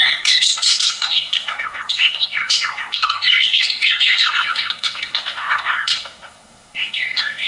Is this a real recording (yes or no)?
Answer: no